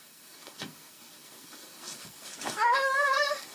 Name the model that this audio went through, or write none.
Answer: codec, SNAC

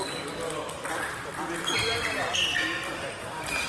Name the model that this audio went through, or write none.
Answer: none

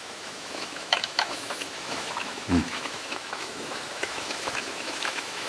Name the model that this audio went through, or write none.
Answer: autoencoder, DAC-VAE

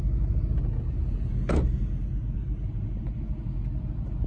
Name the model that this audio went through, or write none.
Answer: none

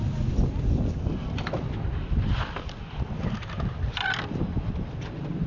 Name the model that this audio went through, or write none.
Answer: none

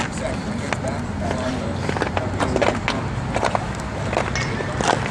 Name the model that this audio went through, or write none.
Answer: none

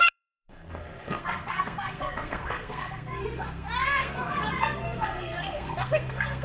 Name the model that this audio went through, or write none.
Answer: codec, SNAC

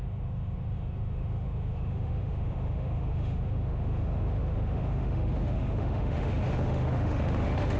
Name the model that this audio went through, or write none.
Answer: autoencoder, DAC-VAE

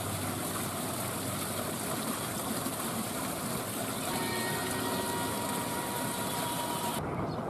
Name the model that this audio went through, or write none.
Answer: none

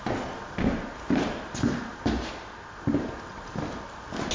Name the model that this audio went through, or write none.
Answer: none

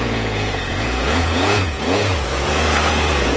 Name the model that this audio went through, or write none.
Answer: vocoder, Vocos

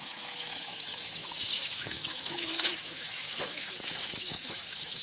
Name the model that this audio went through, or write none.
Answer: autoencoder, DAC-VAE